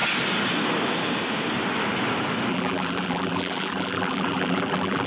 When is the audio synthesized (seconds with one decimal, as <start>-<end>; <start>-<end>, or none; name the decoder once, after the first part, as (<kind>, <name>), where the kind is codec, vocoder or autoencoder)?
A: 2.5-5.1 (vocoder, BigVGAN v2)